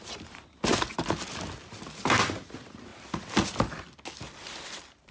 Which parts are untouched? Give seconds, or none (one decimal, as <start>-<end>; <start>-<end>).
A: 2.9-4.4